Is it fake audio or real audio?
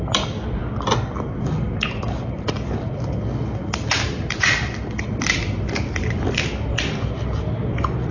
real